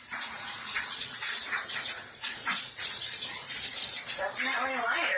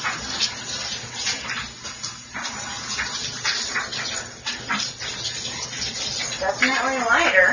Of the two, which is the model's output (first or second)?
first